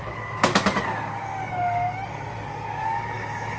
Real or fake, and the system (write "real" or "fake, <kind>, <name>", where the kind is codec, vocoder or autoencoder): fake, codec, DAC